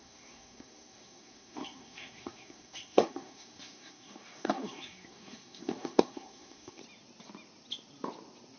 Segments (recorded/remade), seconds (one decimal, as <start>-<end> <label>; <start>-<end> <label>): 0.0-6.8 remade; 6.8-8.6 recorded